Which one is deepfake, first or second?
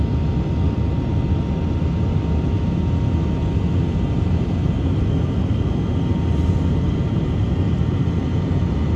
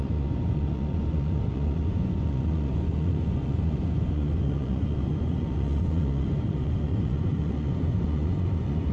second